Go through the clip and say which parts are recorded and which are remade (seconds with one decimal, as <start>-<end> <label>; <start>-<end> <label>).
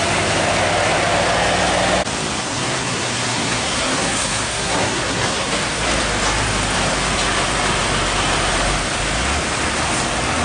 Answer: 0.0-2.4 recorded; 2.4-5.5 remade; 5.5-10.4 recorded